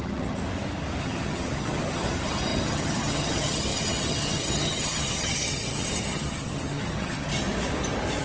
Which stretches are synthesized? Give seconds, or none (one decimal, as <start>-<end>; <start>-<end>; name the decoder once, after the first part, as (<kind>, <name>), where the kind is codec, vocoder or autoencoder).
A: 0.0-0.4 (vocoder, HiFi-GAN); 1.0-7.3